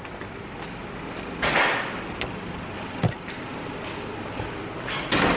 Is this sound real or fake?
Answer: real